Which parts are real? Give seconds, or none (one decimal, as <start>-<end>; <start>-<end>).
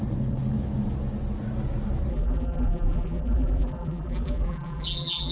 0.0-2.1